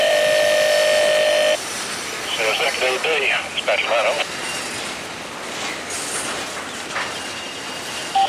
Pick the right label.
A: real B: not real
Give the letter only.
A